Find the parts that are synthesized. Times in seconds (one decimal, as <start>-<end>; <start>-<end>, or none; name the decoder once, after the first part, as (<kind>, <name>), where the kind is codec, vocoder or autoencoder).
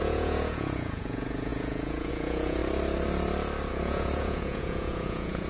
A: 0.0-2.6 (vocoder, Vocos); 3.7-5.5